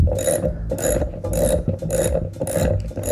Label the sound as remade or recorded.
recorded